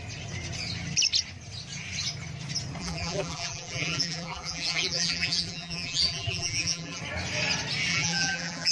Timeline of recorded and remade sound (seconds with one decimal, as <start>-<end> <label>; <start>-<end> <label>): 0.0-2.8 recorded; 2.8-7.0 remade; 7.0-7.9 recorded; 7.9-8.7 remade